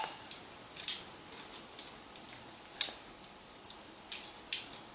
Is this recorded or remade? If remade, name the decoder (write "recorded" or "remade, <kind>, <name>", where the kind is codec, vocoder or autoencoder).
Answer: recorded